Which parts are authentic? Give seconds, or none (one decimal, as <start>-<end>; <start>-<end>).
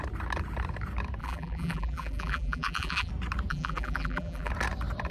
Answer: 0.0-1.2; 3.1-3.5; 4.5-5.1